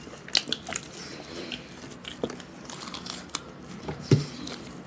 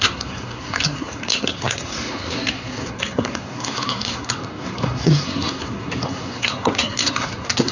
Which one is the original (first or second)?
first